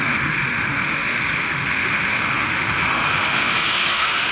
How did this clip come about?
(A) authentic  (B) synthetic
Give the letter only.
B